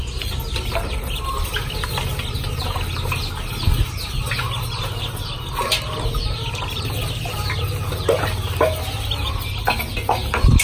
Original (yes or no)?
yes